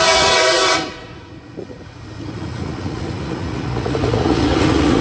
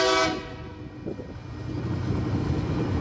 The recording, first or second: second